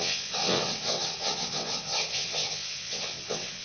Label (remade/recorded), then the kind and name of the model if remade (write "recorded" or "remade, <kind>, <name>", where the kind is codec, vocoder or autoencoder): remade, vocoder, WaveNeXt